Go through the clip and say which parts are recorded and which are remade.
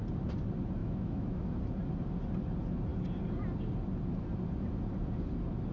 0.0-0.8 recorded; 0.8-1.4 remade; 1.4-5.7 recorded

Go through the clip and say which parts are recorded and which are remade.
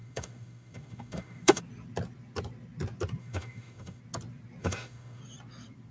0.0-1.6 remade; 1.6-3.2 recorded; 3.2-4.0 remade; 4.0-4.6 recorded; 4.6-5.2 remade; 5.2-5.9 recorded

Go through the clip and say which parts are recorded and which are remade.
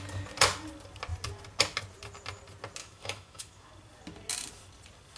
0.0-2.8 recorded; 2.8-3.7 remade; 3.7-5.2 recorded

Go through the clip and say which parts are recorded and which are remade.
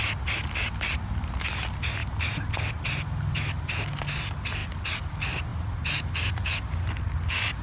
0.0-7.6 recorded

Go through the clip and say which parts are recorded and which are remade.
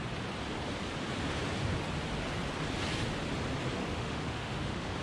0.0-3.8 recorded; 3.8-5.0 remade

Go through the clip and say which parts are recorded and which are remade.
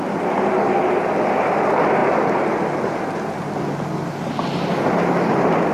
0.0-5.7 recorded